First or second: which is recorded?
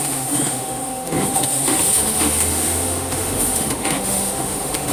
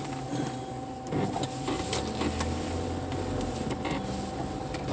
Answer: second